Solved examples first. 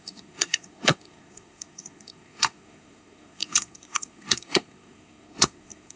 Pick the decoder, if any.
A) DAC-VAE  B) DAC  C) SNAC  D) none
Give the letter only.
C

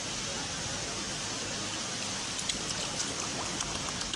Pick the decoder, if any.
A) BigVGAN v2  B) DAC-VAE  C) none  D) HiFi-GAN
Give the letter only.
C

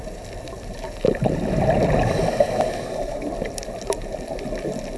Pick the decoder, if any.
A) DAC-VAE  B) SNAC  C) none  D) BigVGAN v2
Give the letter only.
D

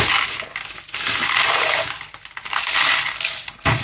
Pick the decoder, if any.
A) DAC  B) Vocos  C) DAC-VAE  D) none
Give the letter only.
D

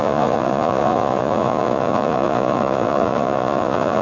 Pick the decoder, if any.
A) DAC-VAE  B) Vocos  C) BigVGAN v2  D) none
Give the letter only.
B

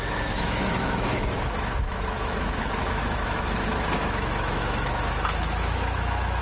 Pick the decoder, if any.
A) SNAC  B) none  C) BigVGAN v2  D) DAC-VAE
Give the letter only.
D